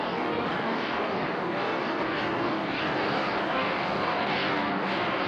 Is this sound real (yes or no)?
no